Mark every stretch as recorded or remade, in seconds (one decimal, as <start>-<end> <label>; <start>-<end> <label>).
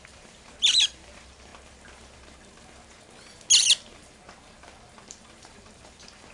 0.0-1.5 remade; 1.5-5.1 recorded; 5.1-6.3 remade